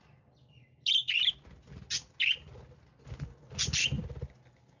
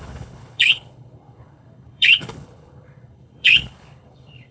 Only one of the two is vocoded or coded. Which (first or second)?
second